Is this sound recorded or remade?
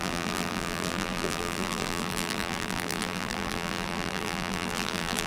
remade